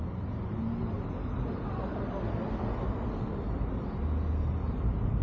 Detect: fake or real real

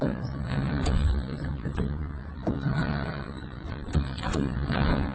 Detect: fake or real fake